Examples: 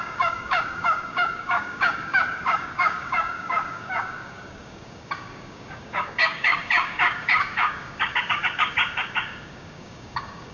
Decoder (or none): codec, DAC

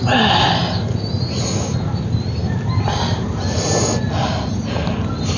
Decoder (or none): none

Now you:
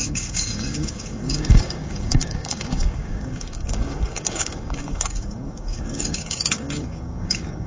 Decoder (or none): codec, DAC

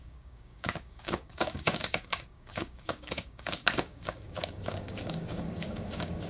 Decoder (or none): codec, DAC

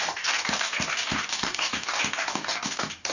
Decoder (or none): codec, DAC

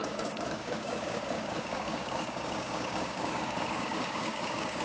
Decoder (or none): codec, DAC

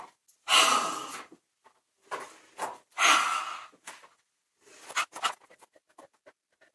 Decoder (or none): none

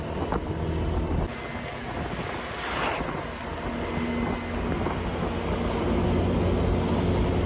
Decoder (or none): none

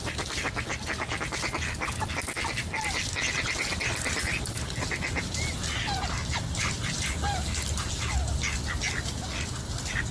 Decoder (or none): none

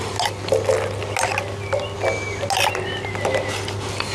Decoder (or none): none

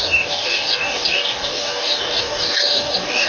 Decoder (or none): codec, DAC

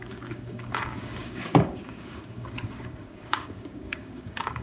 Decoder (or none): codec, DAC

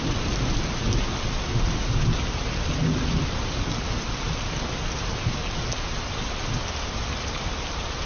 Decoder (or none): none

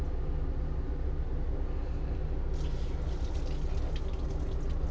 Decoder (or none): none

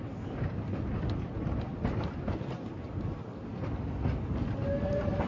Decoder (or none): none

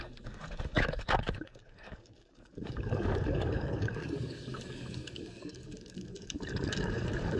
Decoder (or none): codec, DAC